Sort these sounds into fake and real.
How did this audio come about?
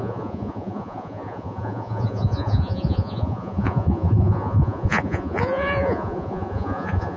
fake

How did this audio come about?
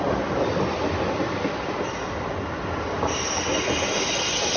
real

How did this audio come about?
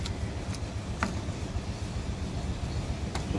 real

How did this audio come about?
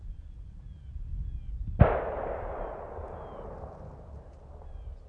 real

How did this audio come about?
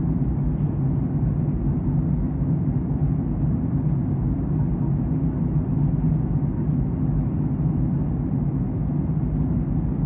real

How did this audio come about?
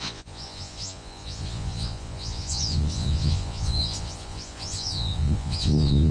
fake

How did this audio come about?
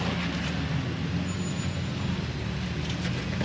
real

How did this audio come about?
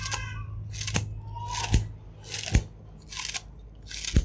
real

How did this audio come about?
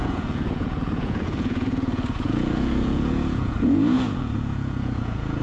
fake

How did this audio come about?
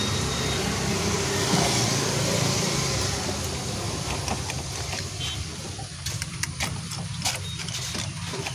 real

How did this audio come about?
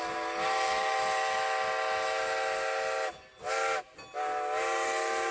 real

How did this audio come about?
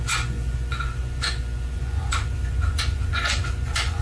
fake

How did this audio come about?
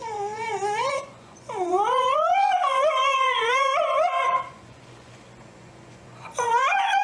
fake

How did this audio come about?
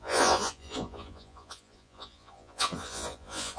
fake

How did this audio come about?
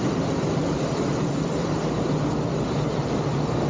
real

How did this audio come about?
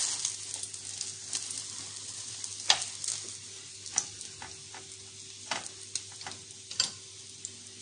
real